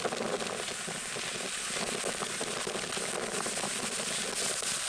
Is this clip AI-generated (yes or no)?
no